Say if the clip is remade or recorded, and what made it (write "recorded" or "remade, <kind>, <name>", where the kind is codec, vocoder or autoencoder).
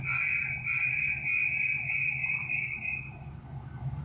recorded